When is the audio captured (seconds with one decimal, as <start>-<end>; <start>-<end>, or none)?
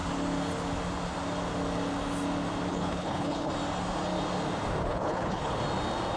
0.0-2.7; 3.5-4.9; 5.5-6.2